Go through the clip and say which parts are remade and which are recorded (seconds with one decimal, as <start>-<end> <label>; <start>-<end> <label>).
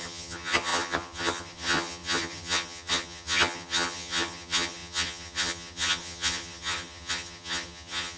0.0-8.2 remade